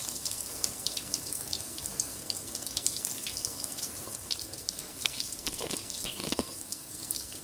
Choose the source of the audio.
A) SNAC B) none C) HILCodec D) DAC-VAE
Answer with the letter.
A